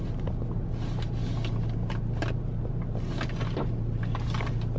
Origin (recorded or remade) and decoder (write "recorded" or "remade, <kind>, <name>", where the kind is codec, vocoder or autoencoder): recorded